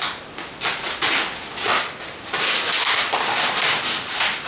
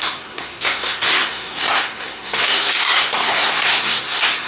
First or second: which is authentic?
first